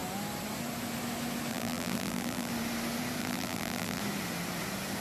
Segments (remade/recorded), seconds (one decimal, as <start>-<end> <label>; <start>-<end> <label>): 0.0-1.5 recorded; 1.5-2.5 remade; 2.5-3.2 recorded; 3.2-4.0 remade; 4.0-5.0 recorded